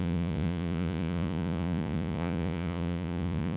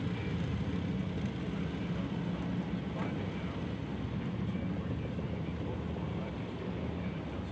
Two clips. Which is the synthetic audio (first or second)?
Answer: first